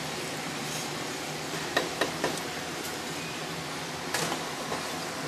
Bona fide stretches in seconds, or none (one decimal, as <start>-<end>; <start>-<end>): 3.4-5.3